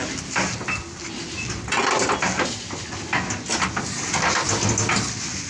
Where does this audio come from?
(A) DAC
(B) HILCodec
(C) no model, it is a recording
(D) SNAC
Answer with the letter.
C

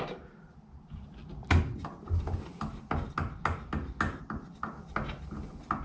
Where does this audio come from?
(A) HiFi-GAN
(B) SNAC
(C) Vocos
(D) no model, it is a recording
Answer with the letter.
D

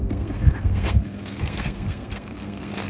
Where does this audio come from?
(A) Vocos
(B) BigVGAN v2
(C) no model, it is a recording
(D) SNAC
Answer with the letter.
D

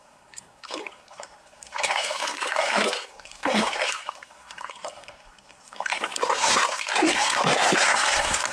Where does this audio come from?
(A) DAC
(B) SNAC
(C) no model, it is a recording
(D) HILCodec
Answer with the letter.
B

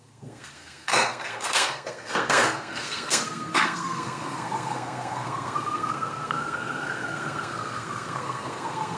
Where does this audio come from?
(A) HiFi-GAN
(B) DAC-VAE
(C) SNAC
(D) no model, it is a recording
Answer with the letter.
C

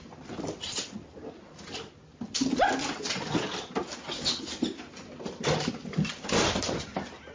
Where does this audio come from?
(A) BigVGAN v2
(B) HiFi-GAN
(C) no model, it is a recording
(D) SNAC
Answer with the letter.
C